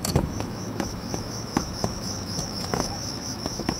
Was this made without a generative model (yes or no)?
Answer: no